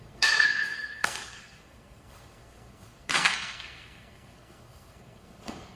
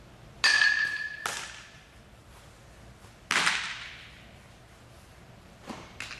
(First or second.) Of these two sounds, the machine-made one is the first